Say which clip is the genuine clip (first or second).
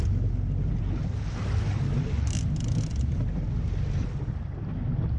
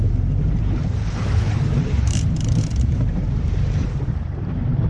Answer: first